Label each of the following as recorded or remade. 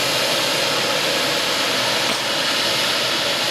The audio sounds recorded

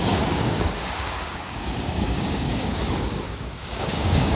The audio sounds remade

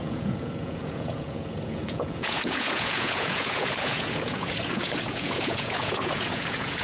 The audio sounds remade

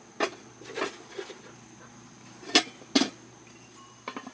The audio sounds recorded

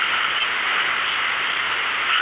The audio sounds recorded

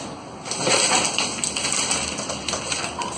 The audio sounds recorded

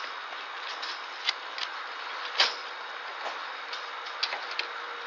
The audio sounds recorded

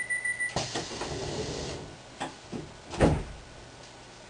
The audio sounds recorded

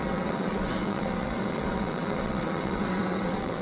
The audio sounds remade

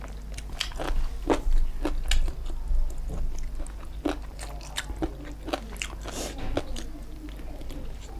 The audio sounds recorded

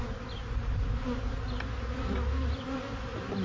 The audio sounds recorded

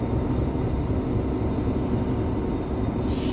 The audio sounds recorded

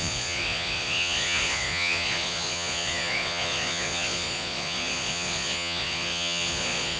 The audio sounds remade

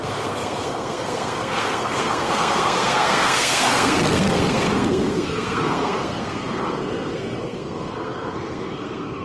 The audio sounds remade